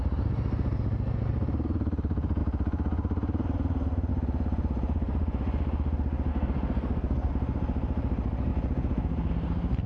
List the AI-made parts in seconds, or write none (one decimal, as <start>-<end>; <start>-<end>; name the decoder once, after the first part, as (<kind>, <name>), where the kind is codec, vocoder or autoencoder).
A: 6.3-7.3 (codec, SNAC)